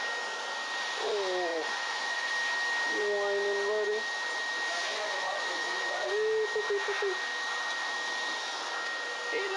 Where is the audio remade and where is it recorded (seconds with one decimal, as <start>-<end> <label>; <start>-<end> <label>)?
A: 0.0-1.5 recorded; 1.5-2.3 remade; 2.3-4.9 recorded; 4.9-6.1 remade; 6.1-9.6 recorded